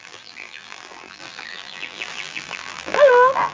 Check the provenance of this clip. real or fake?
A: fake